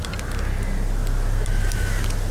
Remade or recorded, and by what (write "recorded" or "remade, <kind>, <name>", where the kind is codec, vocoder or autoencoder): recorded